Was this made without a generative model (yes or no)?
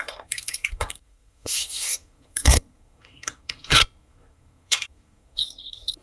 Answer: no